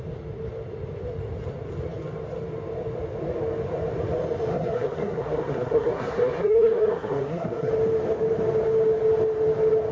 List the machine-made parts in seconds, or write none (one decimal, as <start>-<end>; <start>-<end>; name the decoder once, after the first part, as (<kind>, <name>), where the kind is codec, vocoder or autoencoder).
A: 4.5-7.7 (codec, SNAC)